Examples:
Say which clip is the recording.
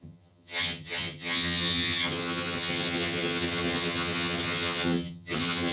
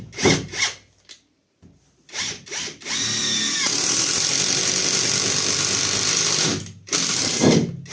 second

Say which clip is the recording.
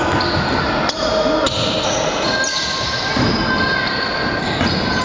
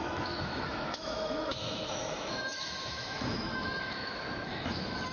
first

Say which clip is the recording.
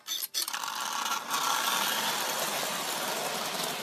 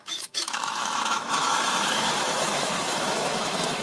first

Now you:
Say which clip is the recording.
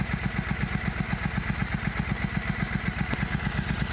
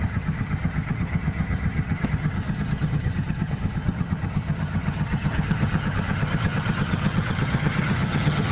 first